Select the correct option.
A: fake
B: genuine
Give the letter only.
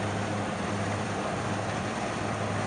A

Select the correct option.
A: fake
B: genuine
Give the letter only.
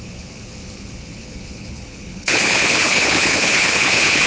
A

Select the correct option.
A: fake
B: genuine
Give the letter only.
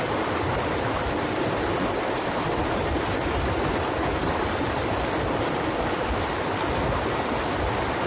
B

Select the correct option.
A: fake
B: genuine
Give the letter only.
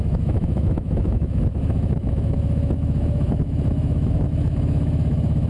A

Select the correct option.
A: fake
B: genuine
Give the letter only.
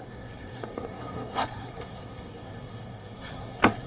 A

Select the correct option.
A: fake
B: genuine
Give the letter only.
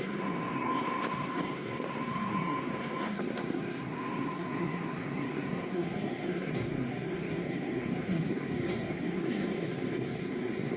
A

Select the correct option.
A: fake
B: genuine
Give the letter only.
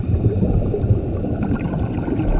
B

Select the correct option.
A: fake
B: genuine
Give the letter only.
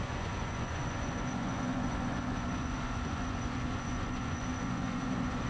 A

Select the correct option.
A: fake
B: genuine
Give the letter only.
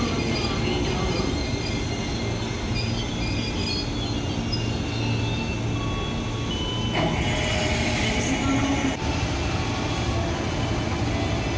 B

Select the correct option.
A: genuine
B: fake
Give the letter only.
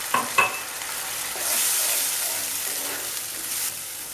B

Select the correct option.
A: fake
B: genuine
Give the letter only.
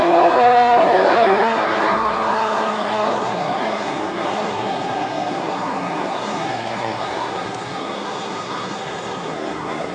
A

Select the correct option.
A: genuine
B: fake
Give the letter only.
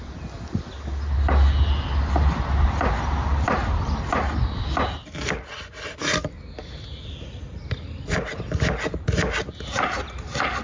A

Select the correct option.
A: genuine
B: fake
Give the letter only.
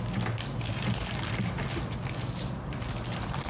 A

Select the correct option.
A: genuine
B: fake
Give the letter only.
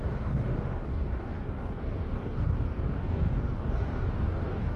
B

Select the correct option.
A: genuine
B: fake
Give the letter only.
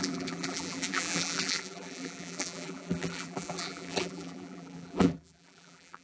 B